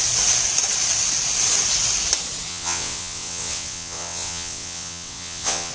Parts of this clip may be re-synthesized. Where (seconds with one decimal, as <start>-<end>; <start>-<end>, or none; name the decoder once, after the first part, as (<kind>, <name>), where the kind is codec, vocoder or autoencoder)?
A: 2.5-5.7 (vocoder, WaveNeXt)